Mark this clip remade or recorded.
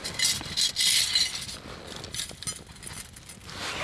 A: recorded